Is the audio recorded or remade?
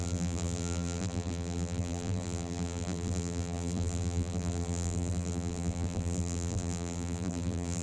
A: remade